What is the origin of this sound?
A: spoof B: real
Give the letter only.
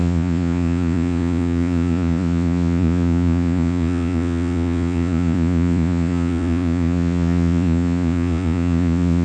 A